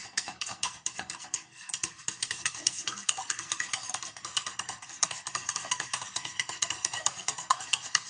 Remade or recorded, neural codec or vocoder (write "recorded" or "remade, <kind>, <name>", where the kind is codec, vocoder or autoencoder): remade, codec, SNAC